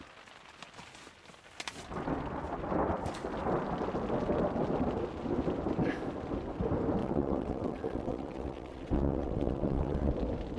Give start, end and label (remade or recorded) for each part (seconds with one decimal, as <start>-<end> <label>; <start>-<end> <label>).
0.0-7.0 recorded; 7.0-10.1 remade; 10.1-10.6 recorded